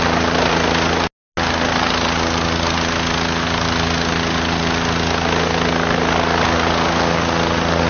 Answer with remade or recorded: recorded